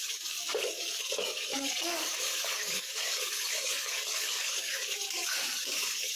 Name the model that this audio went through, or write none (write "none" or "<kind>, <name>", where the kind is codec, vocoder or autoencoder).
codec, DAC